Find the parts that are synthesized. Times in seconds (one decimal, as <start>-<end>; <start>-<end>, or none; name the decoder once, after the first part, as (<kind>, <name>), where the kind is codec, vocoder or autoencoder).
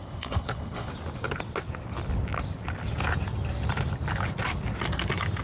0.0-0.9 (codec, HILCodec)